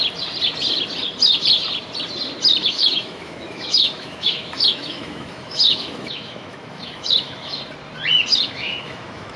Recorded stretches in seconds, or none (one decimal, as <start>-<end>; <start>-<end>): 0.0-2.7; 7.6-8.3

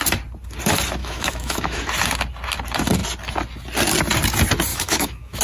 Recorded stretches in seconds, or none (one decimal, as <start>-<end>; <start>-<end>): 0.0-1.0; 1.8-4.7

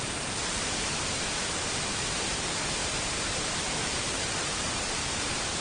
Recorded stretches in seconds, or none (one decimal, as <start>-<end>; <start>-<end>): none

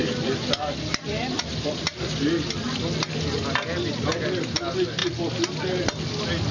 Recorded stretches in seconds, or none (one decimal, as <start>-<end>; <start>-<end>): 0.0-6.5

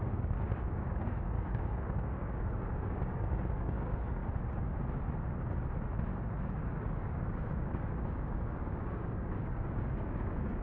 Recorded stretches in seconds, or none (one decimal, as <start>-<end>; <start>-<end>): 4.2-6.4

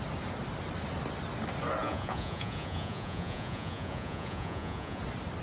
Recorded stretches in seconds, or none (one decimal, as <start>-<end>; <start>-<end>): 0.0-1.8; 5.0-5.4

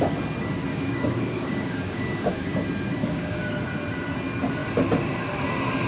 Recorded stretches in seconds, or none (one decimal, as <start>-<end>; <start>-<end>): 0.0-0.7; 2.5-3.0; 3.5-5.9

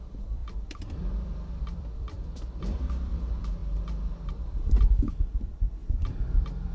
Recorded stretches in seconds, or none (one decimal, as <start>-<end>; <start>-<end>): 3.6-4.3; 5.8-6.7